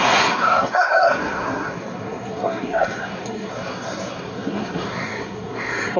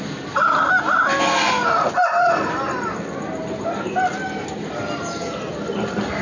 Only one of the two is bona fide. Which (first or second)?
second